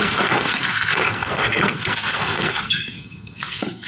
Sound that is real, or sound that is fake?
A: fake